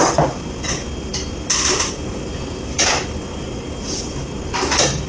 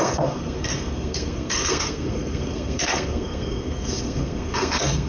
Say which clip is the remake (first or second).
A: second